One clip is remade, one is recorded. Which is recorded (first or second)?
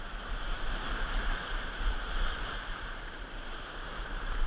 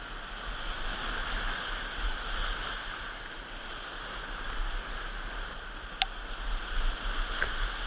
second